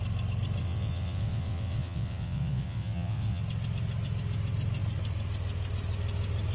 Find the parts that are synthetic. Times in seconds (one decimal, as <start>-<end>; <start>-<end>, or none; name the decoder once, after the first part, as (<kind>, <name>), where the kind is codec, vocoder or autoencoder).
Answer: 0.6-3.4 (vocoder, WaveNeXt)